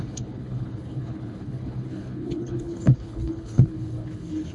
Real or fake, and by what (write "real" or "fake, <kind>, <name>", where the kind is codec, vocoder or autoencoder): fake, codec, HILCodec